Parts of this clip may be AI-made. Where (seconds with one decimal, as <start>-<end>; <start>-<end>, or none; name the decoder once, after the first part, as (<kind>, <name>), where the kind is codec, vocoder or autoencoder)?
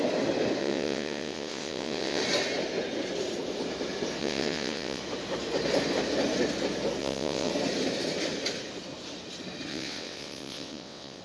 0.6-2.2 (vocoder, WaveNeXt); 4.2-5.0; 7.0-7.5; 9.7-11.2